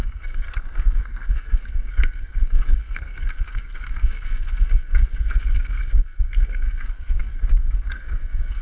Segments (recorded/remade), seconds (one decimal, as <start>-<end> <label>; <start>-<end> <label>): 0.0-8.6 remade